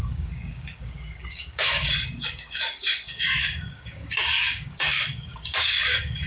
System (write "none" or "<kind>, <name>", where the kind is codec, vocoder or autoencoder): codec, DAC